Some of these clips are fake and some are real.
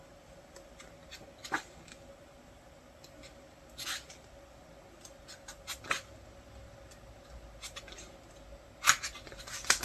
real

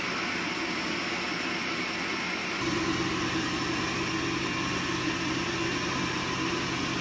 real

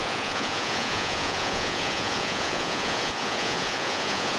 fake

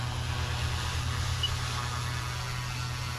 real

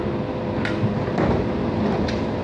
real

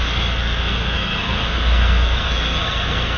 fake